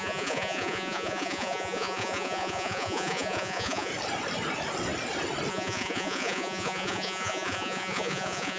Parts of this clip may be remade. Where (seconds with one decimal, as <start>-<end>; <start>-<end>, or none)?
0.0-3.9; 5.5-8.6